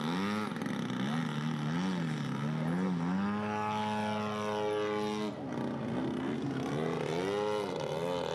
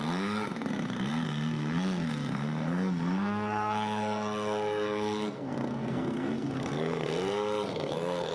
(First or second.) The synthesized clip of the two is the second